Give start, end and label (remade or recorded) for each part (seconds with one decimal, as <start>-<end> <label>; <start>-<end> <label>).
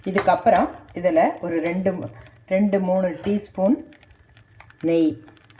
0.0-5.6 recorded